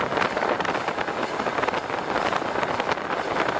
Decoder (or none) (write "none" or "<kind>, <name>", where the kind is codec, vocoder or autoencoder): none